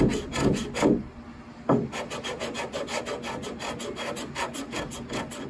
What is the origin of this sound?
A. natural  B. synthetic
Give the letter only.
A